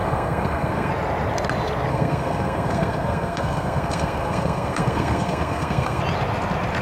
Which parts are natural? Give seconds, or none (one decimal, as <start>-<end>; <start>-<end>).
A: 0.9-1.9; 6.0-6.8